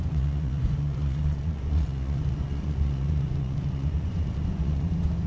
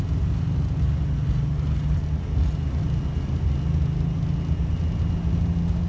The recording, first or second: second